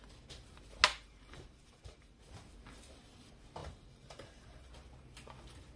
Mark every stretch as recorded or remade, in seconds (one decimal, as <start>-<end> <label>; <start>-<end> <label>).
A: 0.0-0.9 recorded; 0.9-2.2 remade; 2.2-3.6 recorded; 3.6-4.7 remade; 4.7-5.8 recorded